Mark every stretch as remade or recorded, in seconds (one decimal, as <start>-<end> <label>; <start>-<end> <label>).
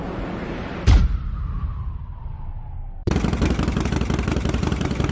0.0-3.1 remade; 3.1-5.1 recorded